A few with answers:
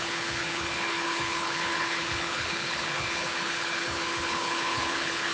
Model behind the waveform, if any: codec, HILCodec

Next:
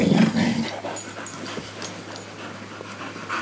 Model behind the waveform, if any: none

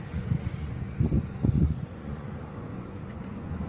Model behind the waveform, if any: vocoder, Vocos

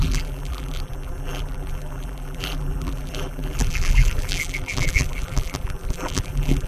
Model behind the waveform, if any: vocoder, BigVGAN v2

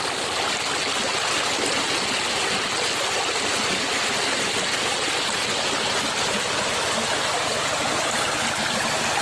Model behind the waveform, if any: none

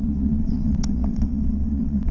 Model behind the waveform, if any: vocoder, WaveNeXt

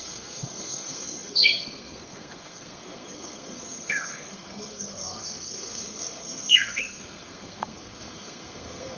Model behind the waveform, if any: codec, SNAC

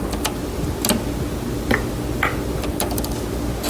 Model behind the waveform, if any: none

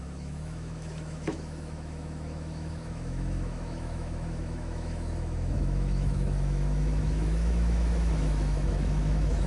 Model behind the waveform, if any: autoencoder, DAC-VAE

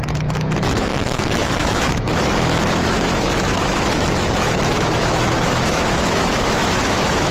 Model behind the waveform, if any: autoencoder, DAC-VAE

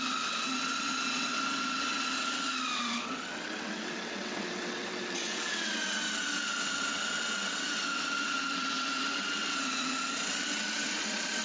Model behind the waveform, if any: vocoder, WaveNeXt